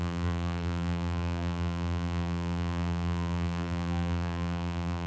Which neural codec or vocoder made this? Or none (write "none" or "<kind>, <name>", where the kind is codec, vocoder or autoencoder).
vocoder, BigVGAN v2